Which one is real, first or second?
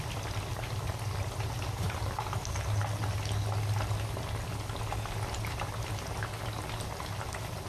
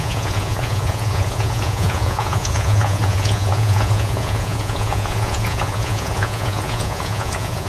first